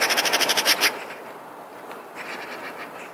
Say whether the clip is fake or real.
real